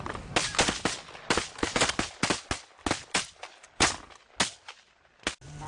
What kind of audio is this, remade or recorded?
recorded